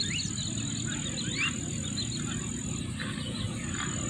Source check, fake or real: real